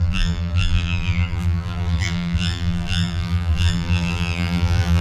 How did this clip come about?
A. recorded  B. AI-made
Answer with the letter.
B